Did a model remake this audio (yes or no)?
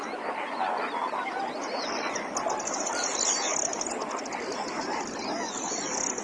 no